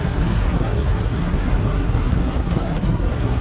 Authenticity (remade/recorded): remade